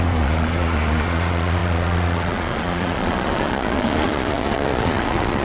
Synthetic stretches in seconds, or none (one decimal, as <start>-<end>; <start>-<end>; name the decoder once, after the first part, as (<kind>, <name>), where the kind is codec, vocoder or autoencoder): 0.0-5.4 (vocoder, Vocos)